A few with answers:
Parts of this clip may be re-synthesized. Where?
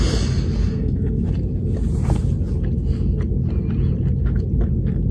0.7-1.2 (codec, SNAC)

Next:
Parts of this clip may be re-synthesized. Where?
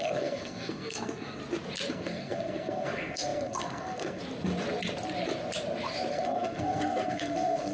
0.0-1.4 (codec, SNAC); 1.9-4.2; 6.1-7.7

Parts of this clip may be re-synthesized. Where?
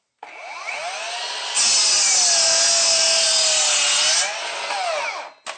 none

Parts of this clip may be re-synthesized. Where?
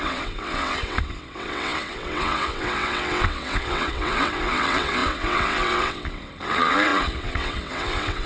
0.0-8.3 (vocoder, WaveNeXt)